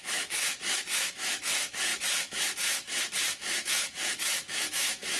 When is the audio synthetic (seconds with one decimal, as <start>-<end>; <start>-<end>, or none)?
0.0-5.2